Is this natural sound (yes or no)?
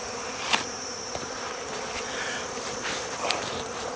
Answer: no